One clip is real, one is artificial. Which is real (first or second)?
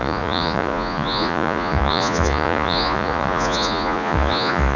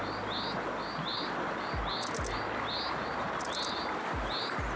second